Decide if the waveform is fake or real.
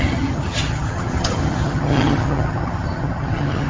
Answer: fake